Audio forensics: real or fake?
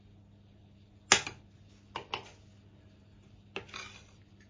real